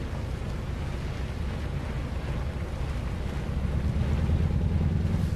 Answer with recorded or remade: recorded